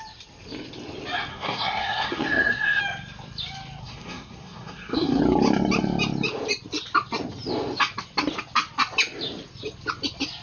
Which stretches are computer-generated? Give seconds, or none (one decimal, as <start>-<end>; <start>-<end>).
1.3-2.8; 3.8-5.2

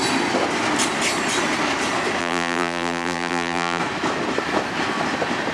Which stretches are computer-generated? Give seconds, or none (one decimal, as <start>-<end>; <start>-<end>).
2.2-3.8

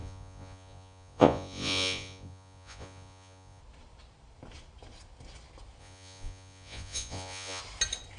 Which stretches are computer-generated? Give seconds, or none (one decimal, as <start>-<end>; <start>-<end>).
0.0-3.6; 5.8-7.6

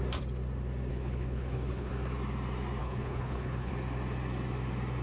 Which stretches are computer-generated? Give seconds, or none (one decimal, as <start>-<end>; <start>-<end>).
0.9-1.9; 2.8-3.7

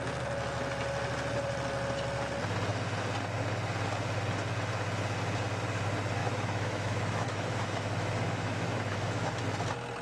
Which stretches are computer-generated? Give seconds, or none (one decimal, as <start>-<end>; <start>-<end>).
6.2-9.4

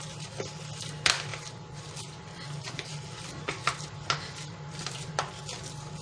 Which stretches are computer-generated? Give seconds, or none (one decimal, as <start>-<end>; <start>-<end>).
none

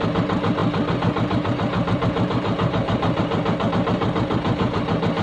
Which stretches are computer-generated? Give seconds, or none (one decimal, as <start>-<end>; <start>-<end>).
none